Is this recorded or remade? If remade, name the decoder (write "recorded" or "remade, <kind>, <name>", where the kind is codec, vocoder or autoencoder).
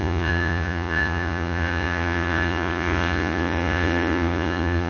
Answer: remade, vocoder, Vocos